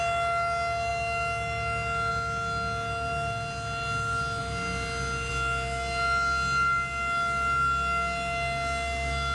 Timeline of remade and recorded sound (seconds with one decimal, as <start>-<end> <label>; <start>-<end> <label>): 0.0-9.3 recorded